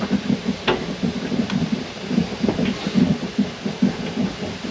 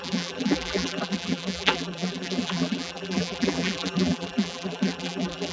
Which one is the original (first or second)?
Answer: first